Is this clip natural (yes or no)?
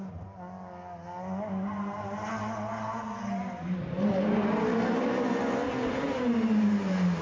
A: yes